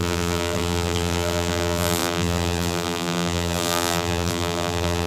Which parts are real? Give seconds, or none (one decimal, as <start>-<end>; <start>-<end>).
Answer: none